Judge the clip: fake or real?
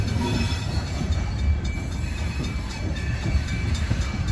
fake